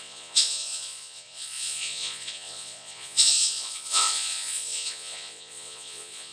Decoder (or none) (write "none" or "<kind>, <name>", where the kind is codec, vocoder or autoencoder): vocoder, Vocos